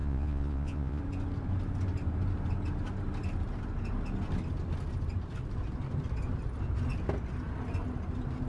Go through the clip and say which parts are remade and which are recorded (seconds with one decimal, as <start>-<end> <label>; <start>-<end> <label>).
0.0-1.0 remade; 1.0-8.5 recorded